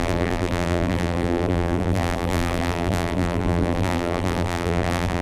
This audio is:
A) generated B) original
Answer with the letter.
A